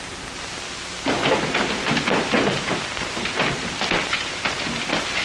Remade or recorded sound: recorded